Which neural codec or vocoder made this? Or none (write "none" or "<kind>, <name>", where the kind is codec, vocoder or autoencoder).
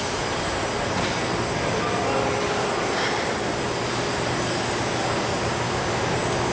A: none